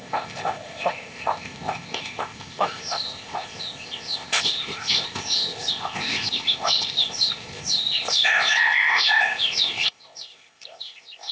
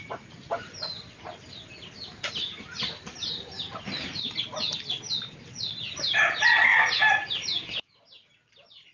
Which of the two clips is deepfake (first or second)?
first